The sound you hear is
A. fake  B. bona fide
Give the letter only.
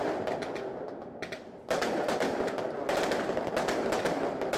B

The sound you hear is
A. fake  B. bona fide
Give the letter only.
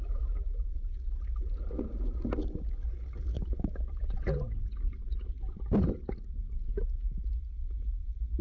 B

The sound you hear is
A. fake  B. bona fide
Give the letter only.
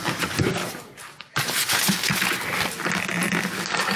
B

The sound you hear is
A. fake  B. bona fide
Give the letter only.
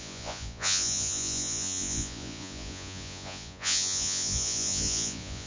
A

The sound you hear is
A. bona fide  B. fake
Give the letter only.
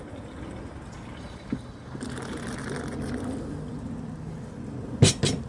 A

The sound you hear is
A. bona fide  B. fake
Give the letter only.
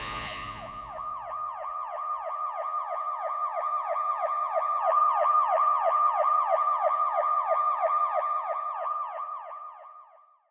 B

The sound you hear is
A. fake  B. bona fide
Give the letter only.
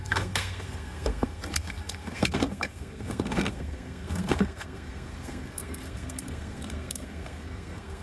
A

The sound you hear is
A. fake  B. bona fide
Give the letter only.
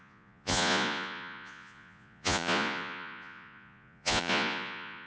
A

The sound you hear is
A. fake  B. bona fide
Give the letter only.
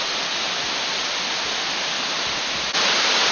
B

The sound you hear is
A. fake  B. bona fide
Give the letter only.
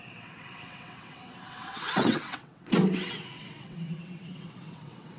A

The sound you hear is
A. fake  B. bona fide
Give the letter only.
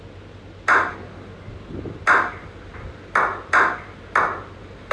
B